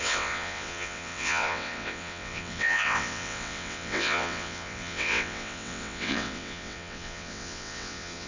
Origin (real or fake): fake